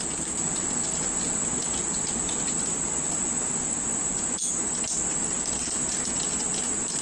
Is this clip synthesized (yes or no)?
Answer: no